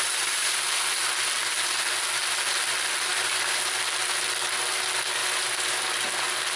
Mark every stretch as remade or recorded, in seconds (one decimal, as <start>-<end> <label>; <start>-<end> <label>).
0.0-5.2 recorded; 5.2-5.8 remade; 5.8-6.6 recorded